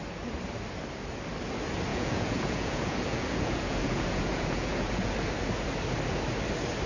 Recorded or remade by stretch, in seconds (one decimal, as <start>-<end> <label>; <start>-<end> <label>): 0.0-1.9 recorded; 1.9-5.1 remade; 5.1-6.9 recorded

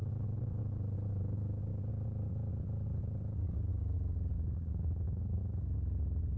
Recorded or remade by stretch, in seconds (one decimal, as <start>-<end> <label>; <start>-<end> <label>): 0.0-1.2 recorded; 1.2-1.7 remade; 1.7-4.3 recorded; 4.3-5.4 remade; 5.4-6.4 recorded

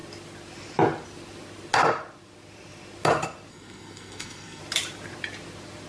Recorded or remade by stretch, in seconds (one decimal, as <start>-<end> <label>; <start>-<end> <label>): 0.0-3.5 recorded; 3.5-4.6 remade; 4.6-5.9 recorded

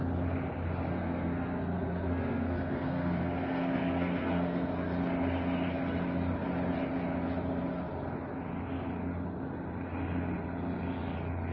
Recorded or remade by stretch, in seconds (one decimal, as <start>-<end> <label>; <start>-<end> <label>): 0.0-0.9 recorded; 0.9-4.7 remade; 4.7-11.5 recorded

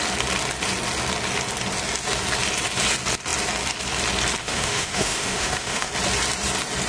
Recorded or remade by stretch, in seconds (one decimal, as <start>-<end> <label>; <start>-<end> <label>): 0.0-4.4 recorded; 4.4-5.9 remade; 5.9-6.9 recorded

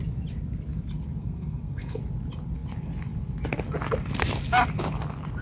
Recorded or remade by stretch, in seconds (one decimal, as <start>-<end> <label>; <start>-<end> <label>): 0.0-1.2 recorded; 1.2-2.0 remade; 2.0-5.4 recorded